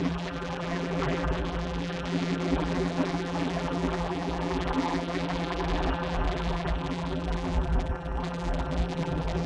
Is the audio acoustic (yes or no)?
no